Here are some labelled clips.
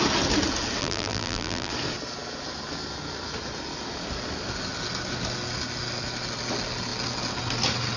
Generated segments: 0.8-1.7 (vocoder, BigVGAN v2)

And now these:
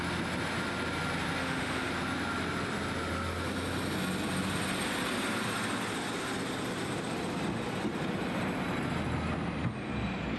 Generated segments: 1.4-1.9 (autoencoder, DAC-VAE)

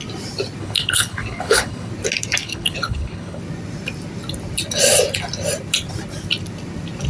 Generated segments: 0.6-1.9 (codec, HILCodec); 2.4-3.4

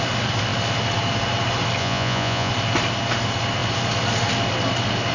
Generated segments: 1.8-2.5 (vocoder, Vocos)

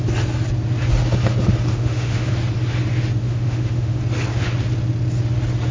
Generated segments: 1.7-2.3 (autoencoder, DAC-VAE); 3.2-4.0

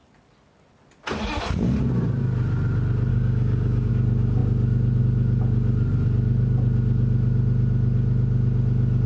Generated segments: 3.1-3.9 (codec, DAC)